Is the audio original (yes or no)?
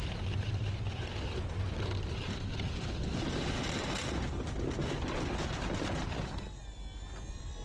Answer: yes